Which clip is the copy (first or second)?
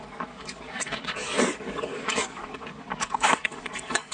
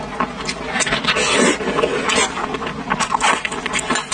first